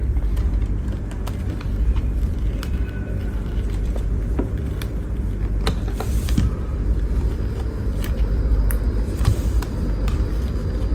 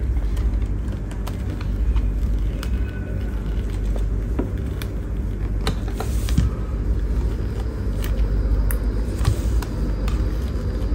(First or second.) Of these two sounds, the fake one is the first